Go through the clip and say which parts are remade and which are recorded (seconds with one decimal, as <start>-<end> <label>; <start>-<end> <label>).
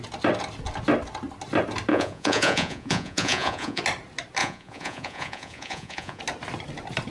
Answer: 0.0-1.9 recorded; 1.9-3.8 remade; 3.8-4.4 recorded; 4.4-6.2 remade; 6.2-7.1 recorded